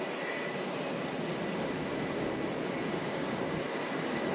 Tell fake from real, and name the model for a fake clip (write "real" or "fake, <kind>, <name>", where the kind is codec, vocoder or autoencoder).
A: real